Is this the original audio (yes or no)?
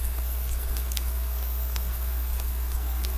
no